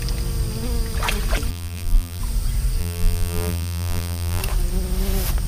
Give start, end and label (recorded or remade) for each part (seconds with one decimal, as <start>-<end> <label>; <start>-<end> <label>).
0.0-1.5 recorded; 1.5-2.2 remade; 2.2-2.8 recorded; 2.8-4.4 remade; 4.4-5.5 recorded